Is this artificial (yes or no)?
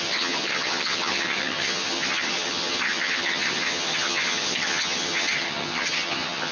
yes